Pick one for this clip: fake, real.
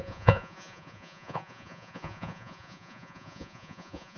fake